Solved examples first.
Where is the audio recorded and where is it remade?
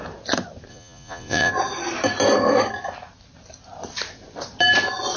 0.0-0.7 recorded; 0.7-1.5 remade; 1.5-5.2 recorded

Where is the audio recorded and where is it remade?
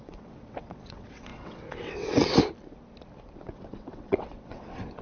0.0-2.4 remade; 2.4-3.4 recorded; 3.4-5.0 remade